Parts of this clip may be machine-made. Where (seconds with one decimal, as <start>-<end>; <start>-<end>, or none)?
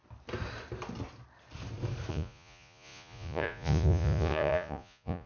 2.1-5.3